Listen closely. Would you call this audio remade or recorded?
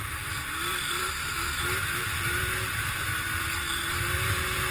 remade